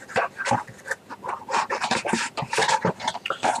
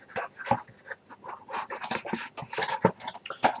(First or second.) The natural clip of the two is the second